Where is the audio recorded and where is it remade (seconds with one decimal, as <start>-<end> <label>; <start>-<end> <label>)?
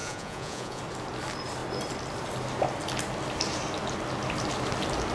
0.0-0.8 remade; 0.8-5.1 recorded